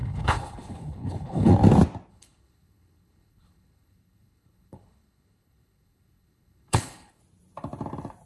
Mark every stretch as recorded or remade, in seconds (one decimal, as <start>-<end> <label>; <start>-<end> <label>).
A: 0.0-1.5 remade; 1.5-2.1 recorded; 2.1-7.2 remade; 7.2-8.3 recorded